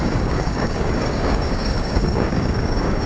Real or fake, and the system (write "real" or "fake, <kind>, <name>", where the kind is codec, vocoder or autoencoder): fake, codec, DAC